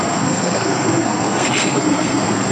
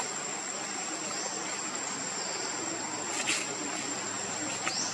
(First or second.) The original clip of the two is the second